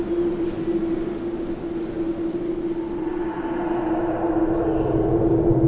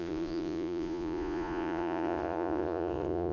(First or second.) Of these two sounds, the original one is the first